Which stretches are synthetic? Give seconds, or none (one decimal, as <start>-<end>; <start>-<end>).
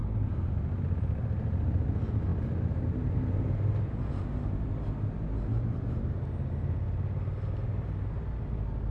none